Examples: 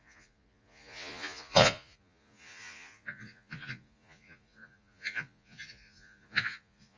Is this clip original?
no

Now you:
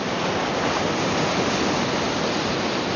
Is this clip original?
yes